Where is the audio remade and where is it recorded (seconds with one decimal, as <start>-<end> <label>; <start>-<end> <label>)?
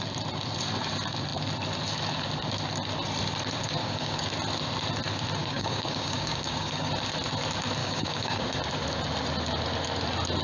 0.0-3.8 recorded; 3.8-4.3 remade; 4.3-5.4 recorded; 5.4-6.9 remade; 6.9-7.8 recorded; 7.8-8.5 remade; 8.5-10.4 recorded